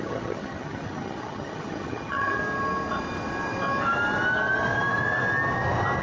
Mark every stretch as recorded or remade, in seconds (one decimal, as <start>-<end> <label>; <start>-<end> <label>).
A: 0.0-2.4 remade; 2.4-6.0 recorded